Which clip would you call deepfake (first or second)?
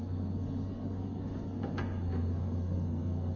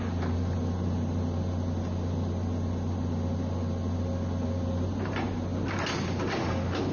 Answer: first